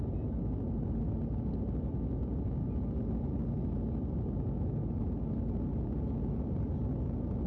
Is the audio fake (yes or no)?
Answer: no